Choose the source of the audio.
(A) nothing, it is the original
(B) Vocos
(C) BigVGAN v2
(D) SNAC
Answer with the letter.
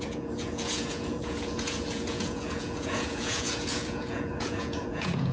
B